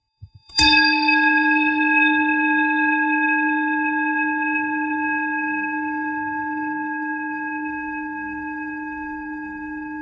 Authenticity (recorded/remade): remade